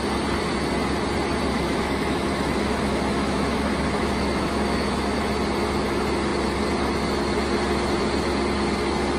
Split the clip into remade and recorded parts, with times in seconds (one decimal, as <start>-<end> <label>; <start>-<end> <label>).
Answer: 0.0-1.5 recorded; 1.5-5.2 remade; 5.2-9.2 recorded